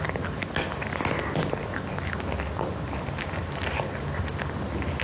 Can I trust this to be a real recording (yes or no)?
yes